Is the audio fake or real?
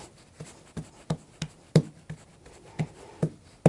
real